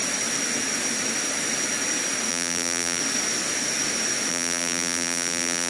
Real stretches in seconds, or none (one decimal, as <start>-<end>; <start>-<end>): 0.0-2.3; 3.0-4.3